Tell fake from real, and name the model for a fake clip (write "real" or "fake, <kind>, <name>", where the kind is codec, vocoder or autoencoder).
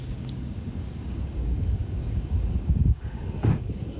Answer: fake, codec, DAC